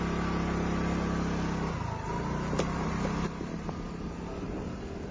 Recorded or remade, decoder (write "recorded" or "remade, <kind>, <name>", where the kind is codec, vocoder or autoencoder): recorded